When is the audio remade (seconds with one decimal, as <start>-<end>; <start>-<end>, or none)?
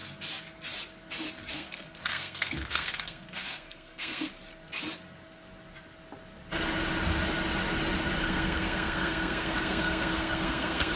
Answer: 1.5-4.3; 8.2-11.0